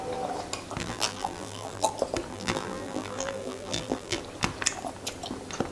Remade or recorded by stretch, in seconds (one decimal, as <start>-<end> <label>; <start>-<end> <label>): 0.0-0.8 recorded; 0.8-1.9 remade; 1.9-2.3 recorded; 2.3-4.2 remade; 4.2-5.7 recorded